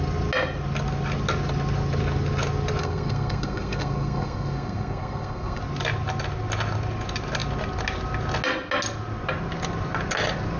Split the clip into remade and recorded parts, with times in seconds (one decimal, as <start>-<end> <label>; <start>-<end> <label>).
0.0-2.8 recorded; 2.8-5.6 remade; 5.6-10.6 recorded